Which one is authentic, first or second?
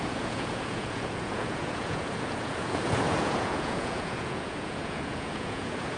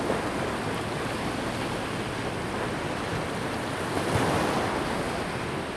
second